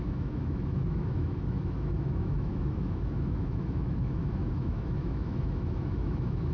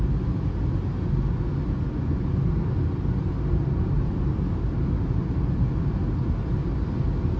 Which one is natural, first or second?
second